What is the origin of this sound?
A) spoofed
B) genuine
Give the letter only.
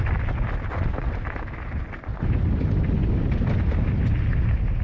B